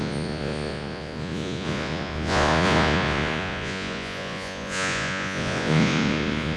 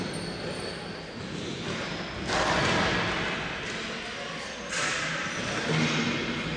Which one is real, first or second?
second